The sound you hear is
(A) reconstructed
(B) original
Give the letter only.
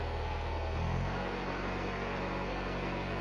A